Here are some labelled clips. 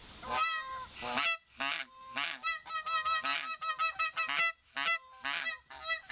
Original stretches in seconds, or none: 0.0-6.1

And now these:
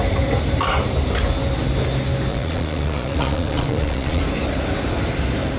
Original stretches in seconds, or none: 0.0-2.3; 4.2-5.6